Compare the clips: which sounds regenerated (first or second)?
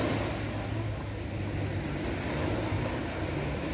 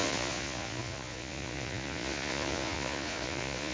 second